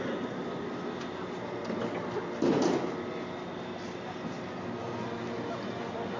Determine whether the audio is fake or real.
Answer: real